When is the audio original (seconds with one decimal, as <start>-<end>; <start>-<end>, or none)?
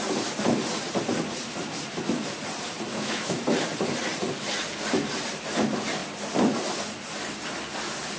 0.0-2.9; 3.4-8.2